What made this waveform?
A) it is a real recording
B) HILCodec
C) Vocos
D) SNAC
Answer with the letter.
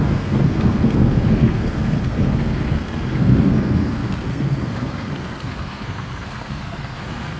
D